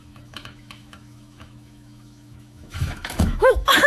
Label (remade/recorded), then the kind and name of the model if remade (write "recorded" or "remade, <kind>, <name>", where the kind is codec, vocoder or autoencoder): remade, autoencoder, DAC-VAE